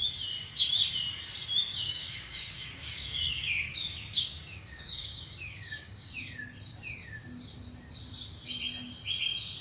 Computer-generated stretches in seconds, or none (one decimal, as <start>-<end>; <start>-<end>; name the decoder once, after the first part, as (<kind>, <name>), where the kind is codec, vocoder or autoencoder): 1.7-6.2 (codec, DAC)